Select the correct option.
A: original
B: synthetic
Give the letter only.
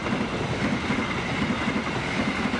A